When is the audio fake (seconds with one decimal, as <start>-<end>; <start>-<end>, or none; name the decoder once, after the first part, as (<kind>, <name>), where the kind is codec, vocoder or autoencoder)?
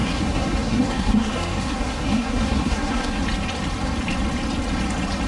0.0-3.2 (codec, SNAC)